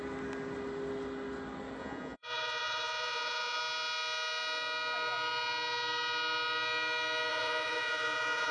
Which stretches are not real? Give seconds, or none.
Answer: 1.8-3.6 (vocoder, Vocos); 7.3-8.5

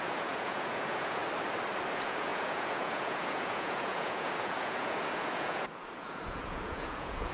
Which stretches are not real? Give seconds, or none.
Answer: 0.0-1.2 (vocoder, Vocos); 1.9-7.3

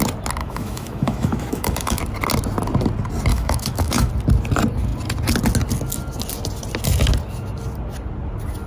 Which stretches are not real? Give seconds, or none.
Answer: 0.4-2.0 (autoencoder, DAC-VAE); 3.3-4.1

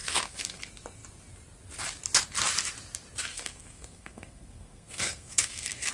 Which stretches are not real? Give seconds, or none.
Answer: 0.0-0.6 (codec, SNAC); 3.3-5.9

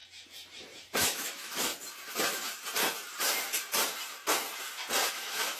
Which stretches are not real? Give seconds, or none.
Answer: 1.0-1.7 (autoencoder, DAC-VAE); 5.1-5.6

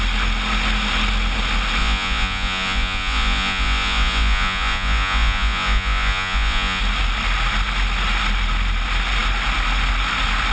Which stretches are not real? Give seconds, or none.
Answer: 1.8-6.8 (vocoder, Vocos)

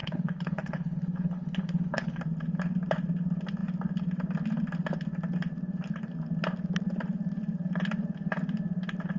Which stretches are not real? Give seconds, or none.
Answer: 0.0-2.2 (codec, HILCodec)